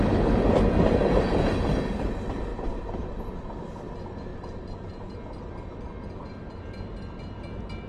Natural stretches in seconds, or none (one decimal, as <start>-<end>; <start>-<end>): 0.0-2.5; 3.2-4.3; 4.9-7.9

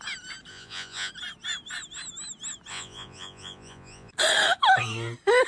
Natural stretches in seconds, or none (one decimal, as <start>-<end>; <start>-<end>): 0.0-0.5; 1.1-2.7; 4.1-5.5

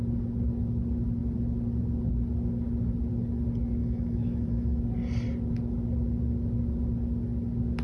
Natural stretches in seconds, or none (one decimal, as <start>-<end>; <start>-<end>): 0.0-3.8; 4.8-7.8

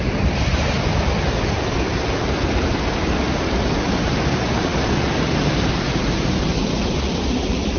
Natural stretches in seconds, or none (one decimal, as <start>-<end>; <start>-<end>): 0.5-4.0

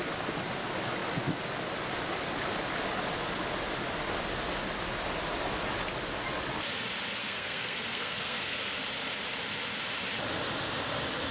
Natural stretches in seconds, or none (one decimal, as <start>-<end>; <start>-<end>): 0.0-7.2; 8.8-11.3